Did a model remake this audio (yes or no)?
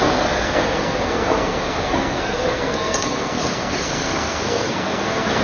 yes